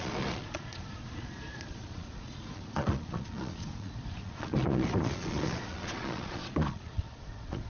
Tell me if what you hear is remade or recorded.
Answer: remade